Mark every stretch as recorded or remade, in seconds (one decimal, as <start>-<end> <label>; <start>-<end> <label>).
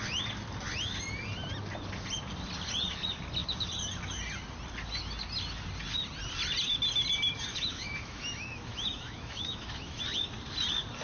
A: 0.0-7.5 recorded; 7.5-10.0 remade; 10.0-11.0 recorded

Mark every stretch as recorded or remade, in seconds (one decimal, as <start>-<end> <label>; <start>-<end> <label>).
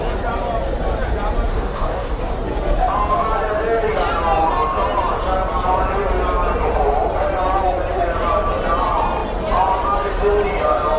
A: 0.0-1.5 recorded; 1.5-2.2 remade; 2.2-11.0 recorded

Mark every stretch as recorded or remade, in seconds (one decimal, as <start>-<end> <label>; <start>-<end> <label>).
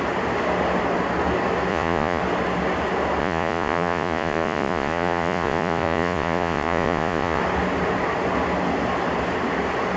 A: 0.0-1.7 recorded; 1.7-2.2 remade; 2.2-3.2 recorded; 3.2-7.4 remade; 7.4-10.0 recorded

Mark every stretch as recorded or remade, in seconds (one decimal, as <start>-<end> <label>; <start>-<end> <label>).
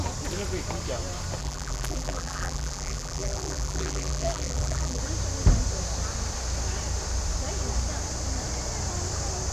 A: 0.0-1.4 recorded; 1.4-5.0 remade; 5.0-9.5 recorded